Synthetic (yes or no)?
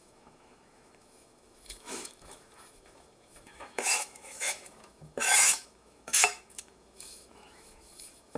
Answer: yes